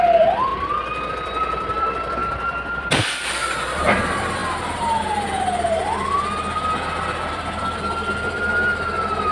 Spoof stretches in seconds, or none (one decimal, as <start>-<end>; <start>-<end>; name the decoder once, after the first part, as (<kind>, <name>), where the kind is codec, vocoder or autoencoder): 0.0-0.5 (vocoder, BigVGAN v2); 1.1-4.4; 7.3-9.3